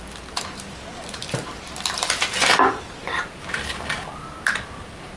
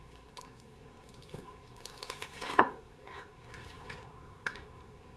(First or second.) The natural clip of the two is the first